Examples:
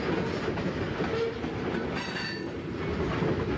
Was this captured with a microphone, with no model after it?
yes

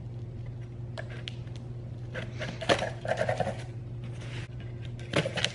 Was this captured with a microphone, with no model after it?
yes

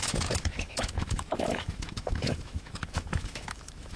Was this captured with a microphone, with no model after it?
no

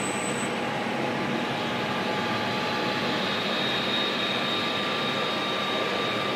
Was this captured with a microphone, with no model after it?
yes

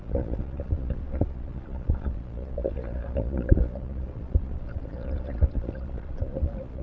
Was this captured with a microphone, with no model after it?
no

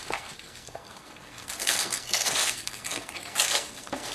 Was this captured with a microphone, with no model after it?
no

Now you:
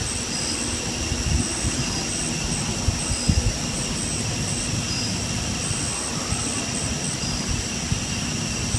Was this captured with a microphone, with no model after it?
yes